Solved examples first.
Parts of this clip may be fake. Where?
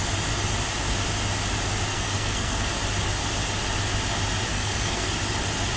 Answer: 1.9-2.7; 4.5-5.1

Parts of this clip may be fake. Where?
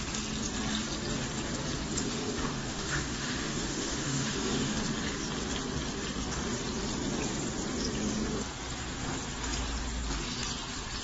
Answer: 2.1-4.8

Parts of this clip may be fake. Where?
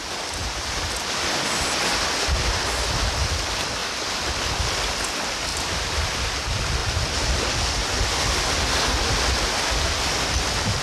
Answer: 5.5-6.3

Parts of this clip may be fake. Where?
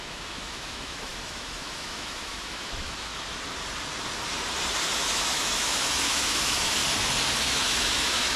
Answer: 0.0-3.1; 5.0-6.8; 7.4-8.4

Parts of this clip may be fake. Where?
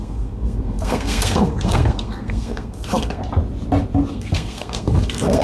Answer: 0.0-3.2; 4.1-5.4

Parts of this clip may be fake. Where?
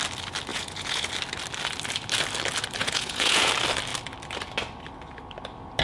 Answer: 0.5-1.1; 2.8-3.5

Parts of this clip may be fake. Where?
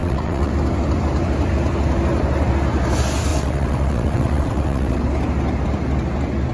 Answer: 0.0-0.5; 3.3-5.0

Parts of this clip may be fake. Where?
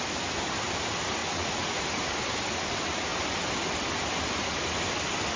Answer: 1.2-1.8